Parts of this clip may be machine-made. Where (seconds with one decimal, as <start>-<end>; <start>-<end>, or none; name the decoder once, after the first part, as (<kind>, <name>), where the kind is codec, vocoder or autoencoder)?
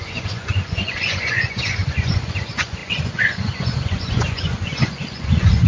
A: 0.0-5.7 (vocoder, Vocos)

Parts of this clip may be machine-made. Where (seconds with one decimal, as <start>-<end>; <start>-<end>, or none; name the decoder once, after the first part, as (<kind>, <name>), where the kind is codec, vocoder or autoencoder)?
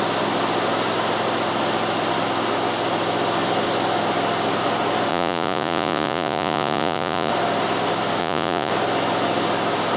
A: 5.1-7.3 (vocoder, Vocos); 8.2-8.7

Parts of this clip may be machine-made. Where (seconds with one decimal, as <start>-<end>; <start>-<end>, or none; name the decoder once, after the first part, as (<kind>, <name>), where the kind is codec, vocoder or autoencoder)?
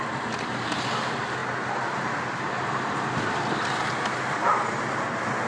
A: none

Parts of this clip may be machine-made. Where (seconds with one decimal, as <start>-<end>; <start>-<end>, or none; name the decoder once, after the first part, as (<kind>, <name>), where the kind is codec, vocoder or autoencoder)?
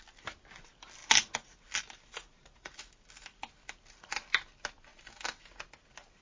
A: 2.2-2.7 (vocoder, Vocos)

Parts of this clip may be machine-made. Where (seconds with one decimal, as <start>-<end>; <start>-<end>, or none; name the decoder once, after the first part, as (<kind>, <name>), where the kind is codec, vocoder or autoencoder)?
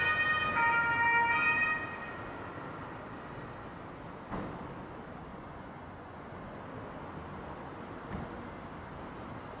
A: 5.3-6.6 (vocoder, Vocos)